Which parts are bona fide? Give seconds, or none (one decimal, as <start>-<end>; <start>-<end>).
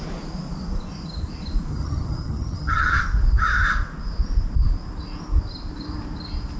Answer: 0.0-1.7; 3.0-6.6